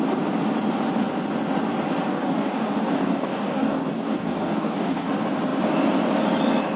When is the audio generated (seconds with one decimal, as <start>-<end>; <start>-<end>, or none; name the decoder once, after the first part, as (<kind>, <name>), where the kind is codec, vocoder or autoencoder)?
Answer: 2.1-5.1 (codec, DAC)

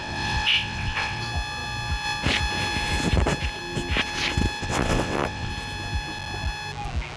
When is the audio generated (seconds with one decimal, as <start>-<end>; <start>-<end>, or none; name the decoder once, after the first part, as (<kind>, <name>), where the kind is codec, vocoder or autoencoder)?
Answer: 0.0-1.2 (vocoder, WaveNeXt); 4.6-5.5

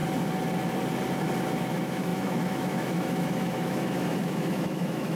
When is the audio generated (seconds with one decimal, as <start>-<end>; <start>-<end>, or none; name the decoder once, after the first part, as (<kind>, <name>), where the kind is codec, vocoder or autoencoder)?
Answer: 1.5-5.2 (autoencoder, DAC-VAE)

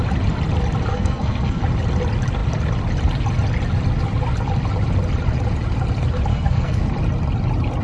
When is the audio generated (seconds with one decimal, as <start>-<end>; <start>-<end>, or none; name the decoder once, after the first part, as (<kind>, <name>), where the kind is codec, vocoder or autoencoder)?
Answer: 0.9-1.6 (codec, SNAC); 6.3-6.8

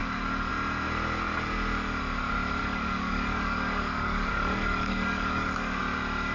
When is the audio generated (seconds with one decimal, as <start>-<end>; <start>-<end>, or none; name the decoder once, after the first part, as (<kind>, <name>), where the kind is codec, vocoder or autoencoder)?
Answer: 0.0-0.5 (codec, DAC); 2.6-5.8

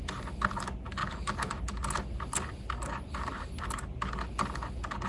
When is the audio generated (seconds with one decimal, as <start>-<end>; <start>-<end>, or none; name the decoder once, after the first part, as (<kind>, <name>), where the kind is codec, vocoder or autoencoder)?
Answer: none